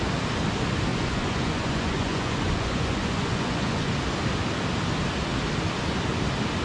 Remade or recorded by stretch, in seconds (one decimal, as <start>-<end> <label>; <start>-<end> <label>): 0.0-0.9 recorded; 0.9-3.9 remade; 3.9-6.6 recorded